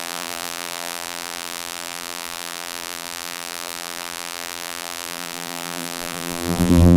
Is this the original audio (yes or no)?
no